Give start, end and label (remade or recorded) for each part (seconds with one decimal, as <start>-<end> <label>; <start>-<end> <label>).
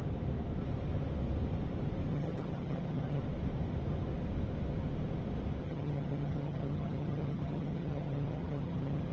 0.0-2.1 recorded; 2.1-3.2 remade; 3.2-5.6 recorded; 5.6-9.1 remade